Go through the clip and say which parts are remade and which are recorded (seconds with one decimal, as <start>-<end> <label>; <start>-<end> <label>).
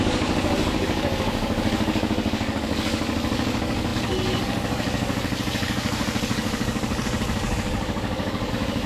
0.0-8.9 remade